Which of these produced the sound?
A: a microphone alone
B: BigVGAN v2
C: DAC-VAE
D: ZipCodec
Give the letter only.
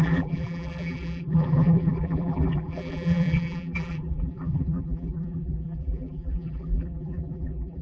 B